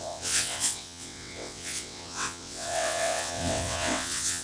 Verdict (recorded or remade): remade